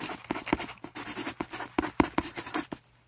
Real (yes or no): no